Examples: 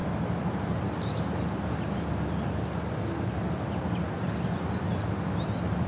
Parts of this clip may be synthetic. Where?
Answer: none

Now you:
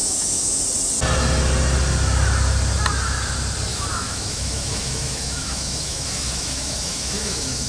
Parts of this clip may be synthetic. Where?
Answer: 0.0-0.6; 3.7-7.7